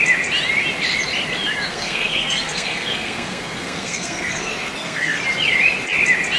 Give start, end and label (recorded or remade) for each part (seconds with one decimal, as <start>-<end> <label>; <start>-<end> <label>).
0.0-1.7 recorded; 1.7-5.2 remade; 5.2-6.4 recorded